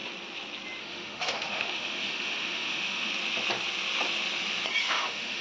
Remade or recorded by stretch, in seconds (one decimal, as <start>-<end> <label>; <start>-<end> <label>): 0.0-0.8 recorded; 0.8-3.1 remade; 3.1-4.8 recorded; 4.8-5.4 remade